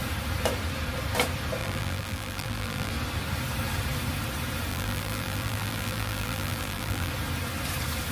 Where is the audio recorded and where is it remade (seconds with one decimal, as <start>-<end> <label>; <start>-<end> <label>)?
0.0-1.6 recorded; 1.6-2.9 remade; 2.9-4.7 recorded; 4.7-7.1 remade; 7.1-8.1 recorded